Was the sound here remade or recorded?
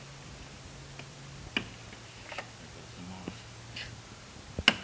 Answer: recorded